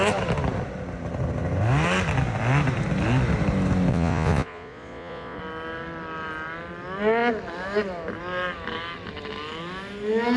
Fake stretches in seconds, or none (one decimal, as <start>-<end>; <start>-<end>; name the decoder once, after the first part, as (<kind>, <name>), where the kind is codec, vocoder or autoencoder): 3.9-5.4 (vocoder, Vocos)